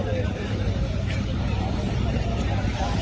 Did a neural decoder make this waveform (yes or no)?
yes